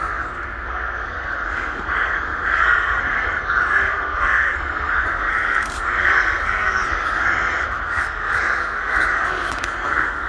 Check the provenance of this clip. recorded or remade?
remade